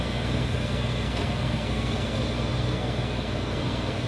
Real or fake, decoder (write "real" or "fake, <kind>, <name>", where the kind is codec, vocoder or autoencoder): fake, codec, SNAC